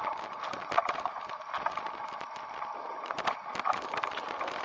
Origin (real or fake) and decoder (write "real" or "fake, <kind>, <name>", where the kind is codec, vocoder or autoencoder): real